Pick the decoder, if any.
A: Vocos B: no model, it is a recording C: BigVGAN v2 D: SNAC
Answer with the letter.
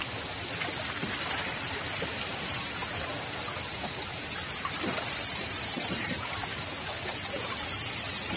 C